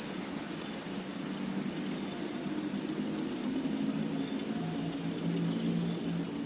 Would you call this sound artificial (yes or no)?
no